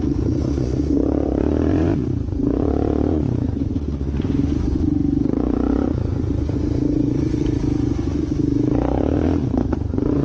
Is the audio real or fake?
fake